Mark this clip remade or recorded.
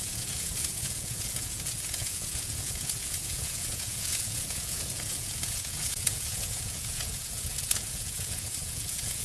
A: remade